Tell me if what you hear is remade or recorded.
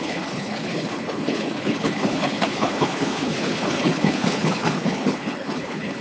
remade